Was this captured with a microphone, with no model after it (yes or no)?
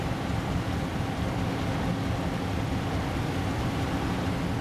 yes